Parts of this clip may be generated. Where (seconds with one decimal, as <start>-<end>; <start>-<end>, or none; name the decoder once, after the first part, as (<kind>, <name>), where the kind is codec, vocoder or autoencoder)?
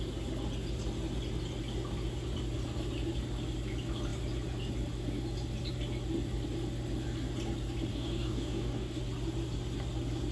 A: 7.9-9.0 (codec, DAC)